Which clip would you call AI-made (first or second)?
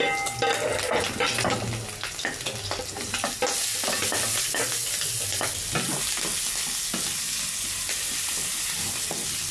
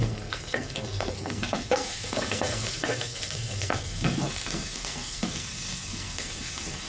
second